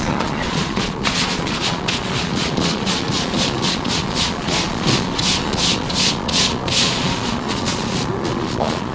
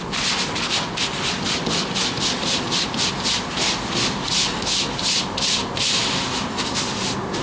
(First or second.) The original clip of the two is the second